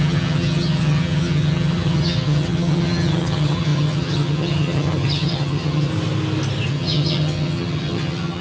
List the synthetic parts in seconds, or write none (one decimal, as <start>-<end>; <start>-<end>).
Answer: 0.0-5.9; 6.7-8.4